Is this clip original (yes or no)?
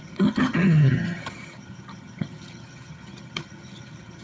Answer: no